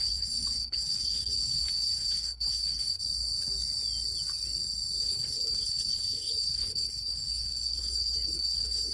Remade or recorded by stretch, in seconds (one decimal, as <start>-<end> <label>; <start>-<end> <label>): 0.0-3.0 remade; 3.0-5.0 recorded; 5.0-8.9 remade